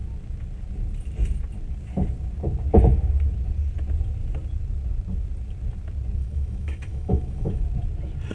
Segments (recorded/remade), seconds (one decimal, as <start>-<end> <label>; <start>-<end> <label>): 0.0-6.2 recorded; 6.2-7.6 remade; 7.6-8.3 recorded